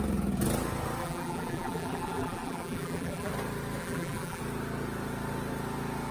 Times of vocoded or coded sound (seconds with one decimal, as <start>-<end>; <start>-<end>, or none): 1.0-3.3; 3.8-4.4